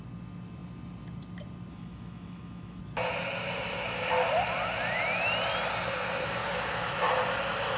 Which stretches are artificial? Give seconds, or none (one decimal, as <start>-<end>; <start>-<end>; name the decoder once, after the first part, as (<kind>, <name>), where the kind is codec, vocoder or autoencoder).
1.7-2.8 (autoencoder, DAC-VAE); 6.4-7.1